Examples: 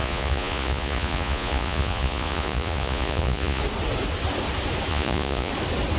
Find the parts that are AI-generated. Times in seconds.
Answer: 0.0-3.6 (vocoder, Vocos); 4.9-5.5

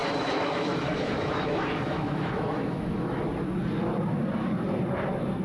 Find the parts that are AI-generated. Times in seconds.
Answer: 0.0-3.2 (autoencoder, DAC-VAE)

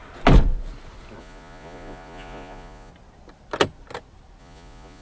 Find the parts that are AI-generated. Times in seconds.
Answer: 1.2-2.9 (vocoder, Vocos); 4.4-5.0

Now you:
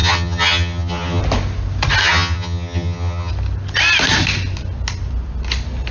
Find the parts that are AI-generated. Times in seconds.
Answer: 0.0-1.2 (vocoder, HiFi-GAN); 2.0-3.3